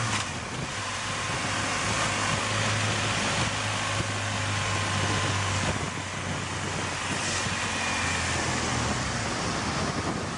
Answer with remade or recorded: recorded